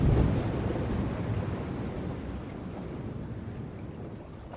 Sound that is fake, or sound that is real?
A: real